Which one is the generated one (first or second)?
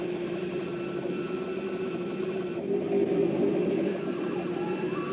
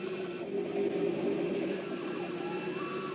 first